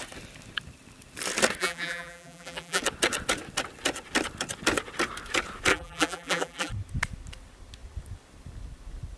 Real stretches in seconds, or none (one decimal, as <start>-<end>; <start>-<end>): 0.0-1.6; 2.8-5.7; 6.7-9.2